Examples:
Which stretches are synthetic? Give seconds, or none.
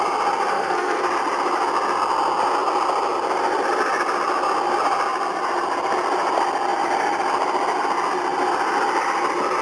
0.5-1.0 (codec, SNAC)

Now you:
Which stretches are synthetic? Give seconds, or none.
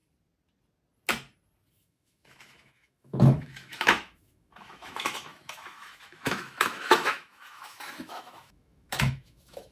1.7-9.7 (autoencoder, DAC-VAE)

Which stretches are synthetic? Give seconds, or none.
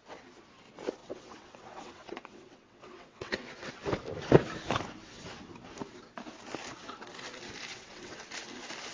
1.0-3.7 (vocoder, WaveNeXt); 7.7-8.2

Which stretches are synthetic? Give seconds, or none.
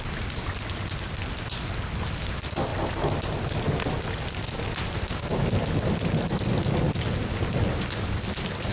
none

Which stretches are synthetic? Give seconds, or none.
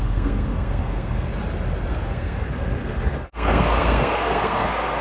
0.0-1.3 (codec, SNAC); 1.9-5.0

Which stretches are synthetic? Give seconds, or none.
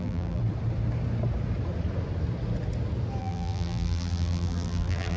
0.0-0.4 (vocoder, BigVGAN v2); 3.2-5.2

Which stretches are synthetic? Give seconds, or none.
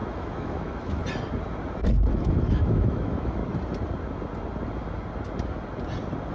0.0-1.0 (autoencoder, DAC-VAE); 2.1-3.4